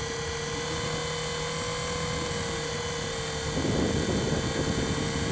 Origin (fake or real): real